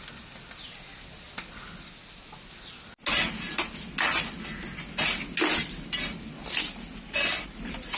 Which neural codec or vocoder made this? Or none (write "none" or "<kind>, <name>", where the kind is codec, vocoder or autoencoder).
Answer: none